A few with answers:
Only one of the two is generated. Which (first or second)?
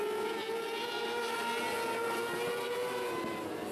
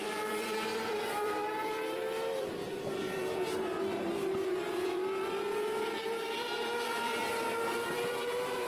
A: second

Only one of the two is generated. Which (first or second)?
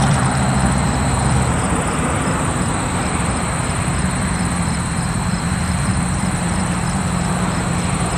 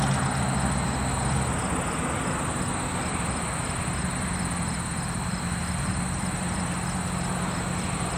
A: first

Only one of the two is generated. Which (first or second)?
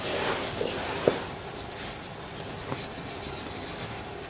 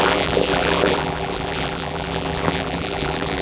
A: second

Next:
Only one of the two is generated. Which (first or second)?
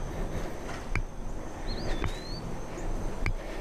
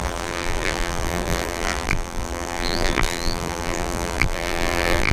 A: second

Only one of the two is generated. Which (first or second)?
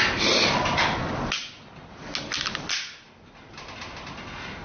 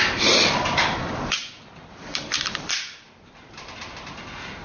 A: second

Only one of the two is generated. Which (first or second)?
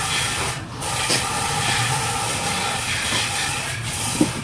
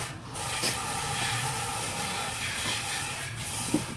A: first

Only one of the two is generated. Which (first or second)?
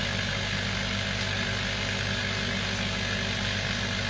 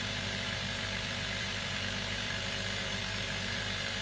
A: second